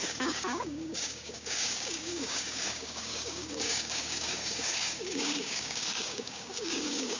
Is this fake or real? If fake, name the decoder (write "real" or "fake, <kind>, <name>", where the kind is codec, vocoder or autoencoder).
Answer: fake, codec, DAC